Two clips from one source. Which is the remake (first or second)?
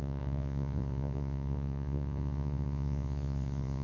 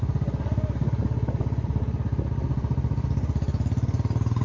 first